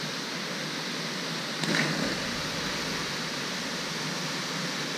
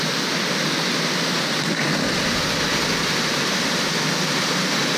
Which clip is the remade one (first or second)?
second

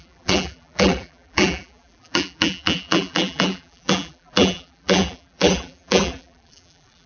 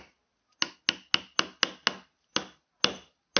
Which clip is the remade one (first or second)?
first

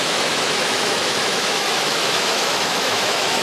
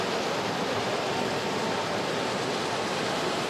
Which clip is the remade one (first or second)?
first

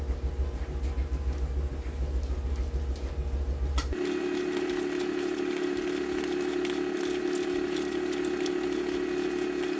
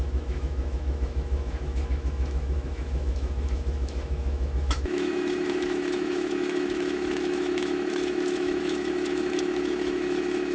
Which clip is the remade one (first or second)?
second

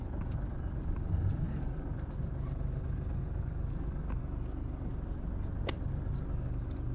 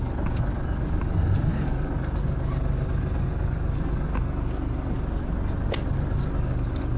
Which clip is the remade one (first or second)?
first